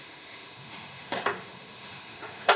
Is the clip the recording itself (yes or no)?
no